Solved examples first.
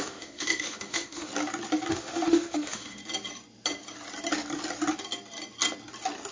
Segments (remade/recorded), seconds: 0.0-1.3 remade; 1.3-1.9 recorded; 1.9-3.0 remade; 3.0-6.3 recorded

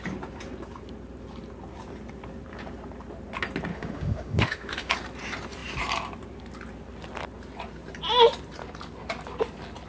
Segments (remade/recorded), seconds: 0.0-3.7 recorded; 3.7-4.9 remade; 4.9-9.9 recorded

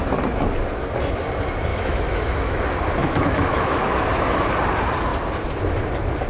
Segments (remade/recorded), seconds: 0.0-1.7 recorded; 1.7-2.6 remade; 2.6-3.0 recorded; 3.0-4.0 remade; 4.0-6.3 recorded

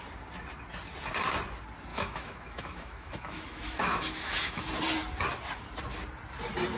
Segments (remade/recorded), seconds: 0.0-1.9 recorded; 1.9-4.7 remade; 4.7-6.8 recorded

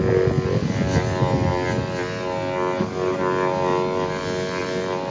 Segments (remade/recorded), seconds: 0.0-5.1 recorded